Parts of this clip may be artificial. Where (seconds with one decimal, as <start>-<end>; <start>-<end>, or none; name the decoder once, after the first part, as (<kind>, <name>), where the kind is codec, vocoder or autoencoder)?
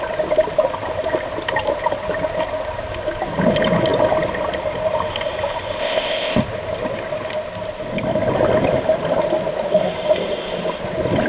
5.8-6.4 (codec, ZipCodec)